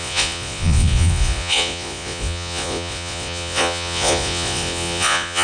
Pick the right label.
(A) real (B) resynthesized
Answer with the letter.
B